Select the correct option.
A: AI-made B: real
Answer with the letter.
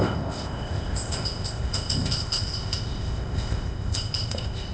A